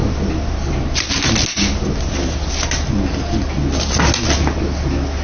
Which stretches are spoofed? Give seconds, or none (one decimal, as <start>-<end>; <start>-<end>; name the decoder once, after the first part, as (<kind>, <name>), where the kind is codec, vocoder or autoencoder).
none